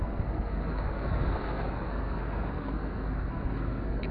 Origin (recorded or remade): remade